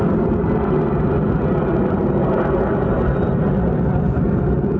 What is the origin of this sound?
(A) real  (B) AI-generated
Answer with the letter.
A